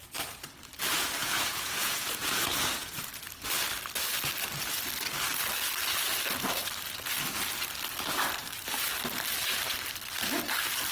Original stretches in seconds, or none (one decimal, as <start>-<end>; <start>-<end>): 0.0-1.2; 3.0-10.9